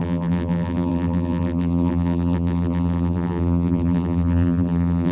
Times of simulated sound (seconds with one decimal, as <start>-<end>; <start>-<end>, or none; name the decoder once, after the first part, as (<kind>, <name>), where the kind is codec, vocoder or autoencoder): 0.0-5.1 (vocoder, BigVGAN v2)